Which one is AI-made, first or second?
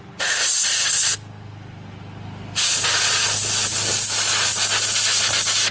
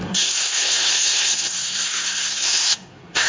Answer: second